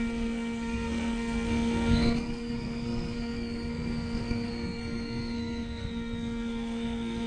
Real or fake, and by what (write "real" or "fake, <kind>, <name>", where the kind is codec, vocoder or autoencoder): fake, codec, SNAC